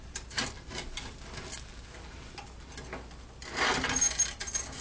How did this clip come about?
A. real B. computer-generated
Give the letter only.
A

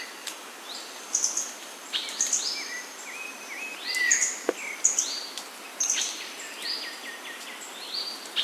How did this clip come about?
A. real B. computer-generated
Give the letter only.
A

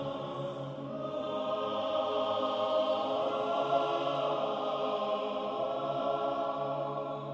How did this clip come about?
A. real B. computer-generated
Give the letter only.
A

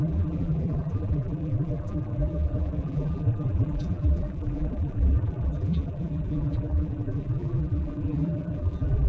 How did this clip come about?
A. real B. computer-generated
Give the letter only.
B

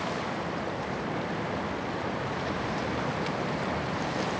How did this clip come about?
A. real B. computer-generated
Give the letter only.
B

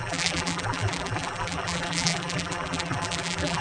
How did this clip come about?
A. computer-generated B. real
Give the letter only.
A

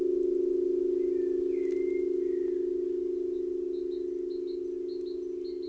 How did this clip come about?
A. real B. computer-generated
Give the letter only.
A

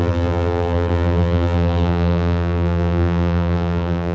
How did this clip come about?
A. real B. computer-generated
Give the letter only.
B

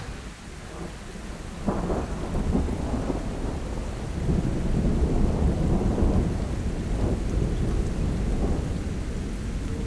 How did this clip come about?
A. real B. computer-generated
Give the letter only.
A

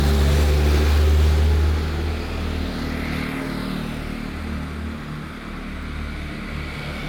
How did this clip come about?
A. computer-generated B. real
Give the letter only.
B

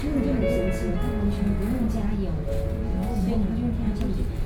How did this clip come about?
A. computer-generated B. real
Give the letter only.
B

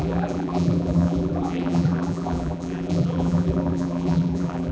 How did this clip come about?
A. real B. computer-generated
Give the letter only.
B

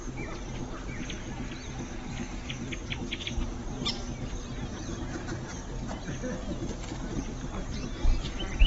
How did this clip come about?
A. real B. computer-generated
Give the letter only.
A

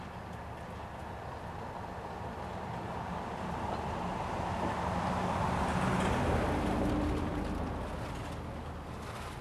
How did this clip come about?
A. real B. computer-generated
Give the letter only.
A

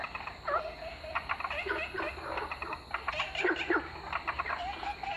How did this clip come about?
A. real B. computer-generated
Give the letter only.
A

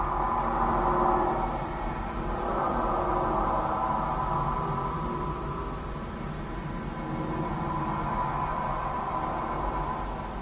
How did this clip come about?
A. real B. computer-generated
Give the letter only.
A